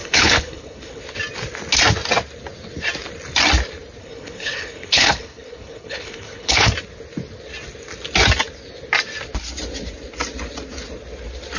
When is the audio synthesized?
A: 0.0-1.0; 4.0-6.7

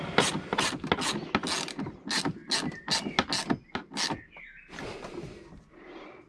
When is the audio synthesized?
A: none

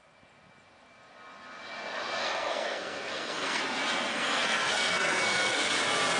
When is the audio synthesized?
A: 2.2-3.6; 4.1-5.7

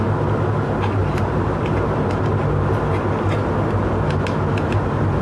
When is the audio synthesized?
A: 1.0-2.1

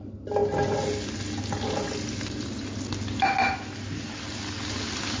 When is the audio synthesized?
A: none